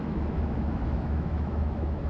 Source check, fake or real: fake